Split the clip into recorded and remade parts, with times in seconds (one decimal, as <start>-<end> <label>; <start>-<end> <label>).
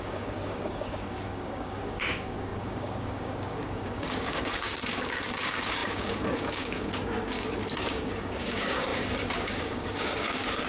0.0-10.7 remade